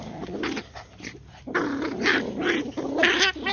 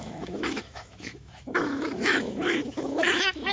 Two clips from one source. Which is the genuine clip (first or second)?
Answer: first